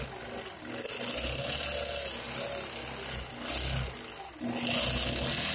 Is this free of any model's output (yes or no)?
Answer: yes